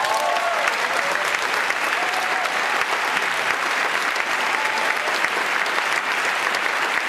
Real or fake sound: real